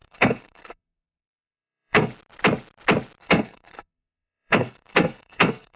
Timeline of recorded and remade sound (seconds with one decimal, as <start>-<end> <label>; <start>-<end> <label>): 0.0-2.1 remade; 2.1-3.2 recorded; 3.2-5.8 remade